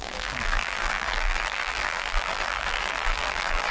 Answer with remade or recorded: remade